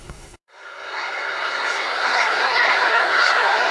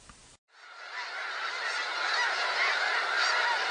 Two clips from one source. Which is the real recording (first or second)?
second